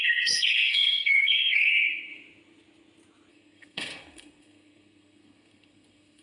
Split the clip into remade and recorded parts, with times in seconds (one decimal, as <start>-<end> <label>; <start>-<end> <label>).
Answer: 0.0-1.7 remade; 1.7-3.3 recorded; 3.3-6.2 remade